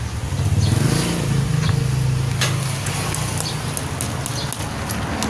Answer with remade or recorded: recorded